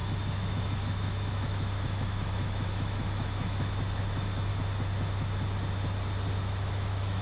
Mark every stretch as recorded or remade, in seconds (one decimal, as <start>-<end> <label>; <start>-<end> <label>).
0.0-4.5 remade; 4.5-6.4 recorded; 6.4-7.2 remade